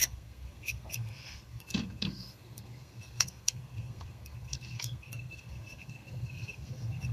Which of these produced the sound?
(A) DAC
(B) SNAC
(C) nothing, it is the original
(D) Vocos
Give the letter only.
B